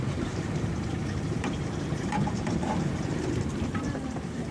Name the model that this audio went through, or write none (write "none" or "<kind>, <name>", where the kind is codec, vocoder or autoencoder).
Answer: vocoder, BigVGAN v2